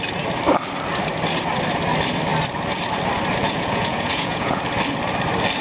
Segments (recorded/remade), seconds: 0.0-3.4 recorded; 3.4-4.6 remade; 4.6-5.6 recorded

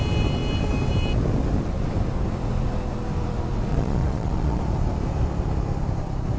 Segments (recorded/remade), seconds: 0.0-3.7 recorded; 3.7-4.6 remade; 4.6-6.4 recorded

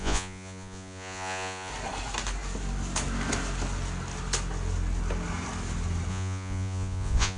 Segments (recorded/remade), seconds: 0.0-1.7 remade; 1.7-6.1 recorded; 6.1-7.4 remade

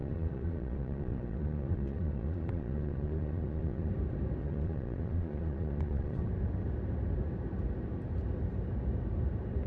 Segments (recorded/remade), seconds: 0.0-3.9 remade; 3.9-4.4 recorded; 4.4-6.2 remade; 6.2-9.7 recorded

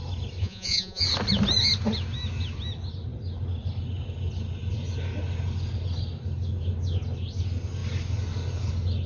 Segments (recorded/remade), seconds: 0.0-0.4 recorded; 0.4-1.0 remade; 1.0-9.1 recorded